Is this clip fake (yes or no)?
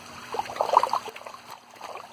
no